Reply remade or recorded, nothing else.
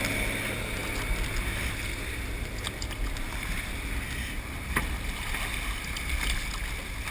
recorded